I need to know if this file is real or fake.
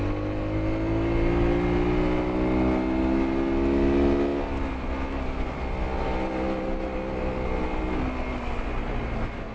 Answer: real